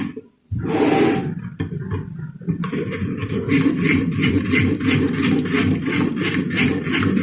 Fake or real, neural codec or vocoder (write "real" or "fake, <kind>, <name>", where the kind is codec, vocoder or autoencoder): fake, vocoder, BigVGAN v2